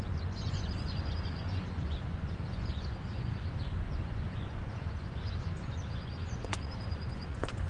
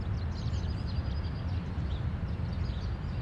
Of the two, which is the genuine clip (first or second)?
second